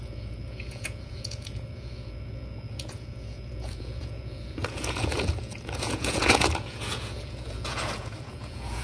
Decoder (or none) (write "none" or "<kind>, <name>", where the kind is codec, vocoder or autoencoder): vocoder, Vocos